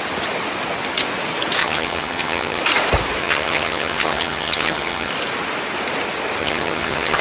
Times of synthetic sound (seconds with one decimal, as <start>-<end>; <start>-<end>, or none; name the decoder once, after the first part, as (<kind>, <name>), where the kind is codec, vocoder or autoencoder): 1.6-2.6 (vocoder, HiFi-GAN); 3.2-5.1; 6.4-7.2